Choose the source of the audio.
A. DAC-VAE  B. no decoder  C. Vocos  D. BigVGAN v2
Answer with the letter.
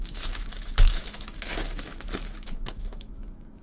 A